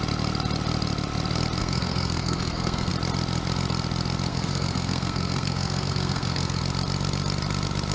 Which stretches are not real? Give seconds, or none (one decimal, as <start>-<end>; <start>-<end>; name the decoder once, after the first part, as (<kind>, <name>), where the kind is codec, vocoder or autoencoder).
1.6-2.9 (codec, SNAC); 4.3-6.6